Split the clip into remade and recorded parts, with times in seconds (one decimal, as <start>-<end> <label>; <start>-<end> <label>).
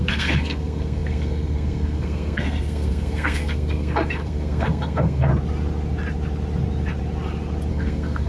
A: 0.0-5.3 remade; 5.3-7.7 recorded; 7.7-8.3 remade